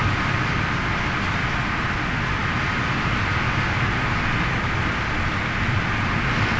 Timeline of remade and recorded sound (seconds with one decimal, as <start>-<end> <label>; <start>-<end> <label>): 0.0-6.6 recorded